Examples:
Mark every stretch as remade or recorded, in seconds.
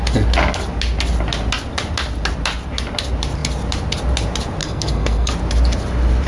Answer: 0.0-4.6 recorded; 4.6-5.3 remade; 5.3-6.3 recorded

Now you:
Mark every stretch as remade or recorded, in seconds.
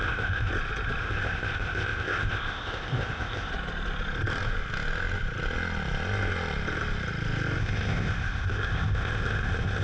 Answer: 0.0-0.5 remade; 0.5-1.0 recorded; 1.0-3.5 remade; 3.5-7.6 recorded; 7.6-9.8 remade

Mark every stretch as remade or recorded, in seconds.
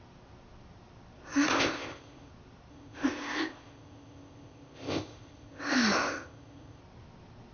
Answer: 0.0-1.5 recorded; 1.5-2.3 remade; 2.3-2.7 recorded; 2.7-6.8 remade; 6.8-7.5 recorded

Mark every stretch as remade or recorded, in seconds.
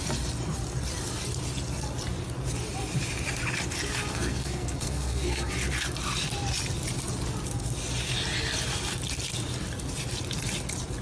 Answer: 0.0-4.1 recorded; 4.1-5.5 remade; 5.5-11.0 recorded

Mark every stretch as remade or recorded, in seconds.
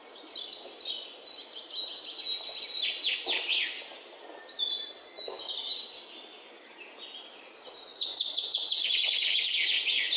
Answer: 0.0-8.1 recorded; 8.1-9.4 remade; 9.4-10.2 recorded